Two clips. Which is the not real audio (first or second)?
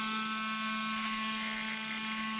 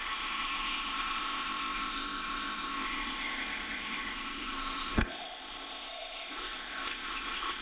second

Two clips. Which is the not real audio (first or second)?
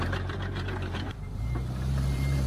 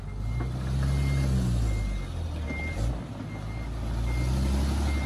first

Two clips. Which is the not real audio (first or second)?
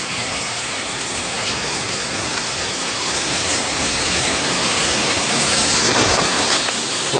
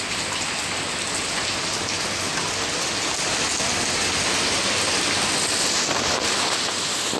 first